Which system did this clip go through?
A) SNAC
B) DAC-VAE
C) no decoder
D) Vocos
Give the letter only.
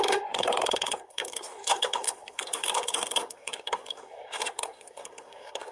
A